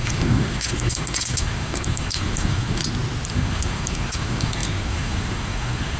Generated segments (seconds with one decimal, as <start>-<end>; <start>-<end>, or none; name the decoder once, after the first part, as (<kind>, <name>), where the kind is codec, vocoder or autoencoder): 0.0-2.8 (codec, SNAC); 3.3-6.0